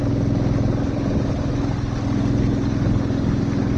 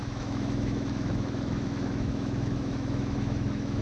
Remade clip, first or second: second